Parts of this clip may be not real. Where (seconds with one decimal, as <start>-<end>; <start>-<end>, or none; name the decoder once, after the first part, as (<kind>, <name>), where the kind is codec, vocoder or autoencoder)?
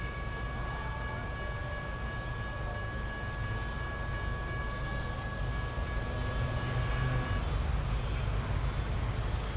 4.6-5.4 (codec, SNAC)